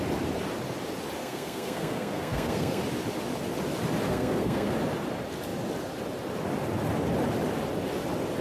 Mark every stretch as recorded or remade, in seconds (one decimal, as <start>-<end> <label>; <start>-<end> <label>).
0.0-1.2 recorded; 1.2-2.8 remade; 2.8-4.1 recorded; 4.1-4.7 remade; 4.7-8.4 recorded